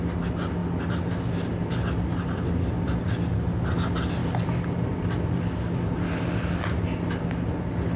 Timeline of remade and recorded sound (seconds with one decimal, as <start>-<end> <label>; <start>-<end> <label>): 0.0-8.0 recorded